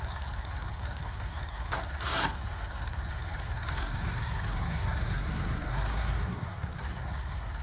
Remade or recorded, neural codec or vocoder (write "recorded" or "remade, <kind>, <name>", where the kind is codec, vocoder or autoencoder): remade, codec, SNAC